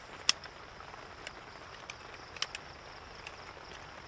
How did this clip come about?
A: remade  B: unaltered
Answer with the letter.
B